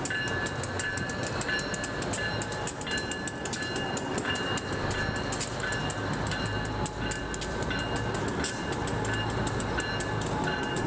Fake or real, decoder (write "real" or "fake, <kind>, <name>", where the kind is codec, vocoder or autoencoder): real